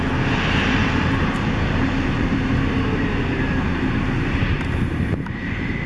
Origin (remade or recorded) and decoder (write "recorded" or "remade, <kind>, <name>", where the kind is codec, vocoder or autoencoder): remade, vocoder, BigVGAN v2